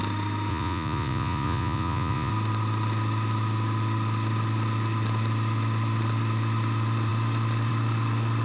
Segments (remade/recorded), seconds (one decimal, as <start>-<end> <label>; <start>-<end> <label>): 0.0-0.5 recorded; 0.5-2.3 remade; 2.3-8.4 recorded